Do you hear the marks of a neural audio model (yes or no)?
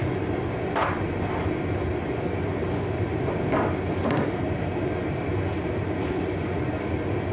yes